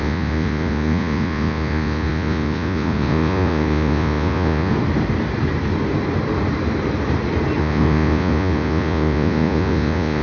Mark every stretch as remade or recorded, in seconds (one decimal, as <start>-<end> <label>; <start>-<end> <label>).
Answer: 0.0-4.7 remade; 4.7-7.6 recorded; 7.6-10.2 remade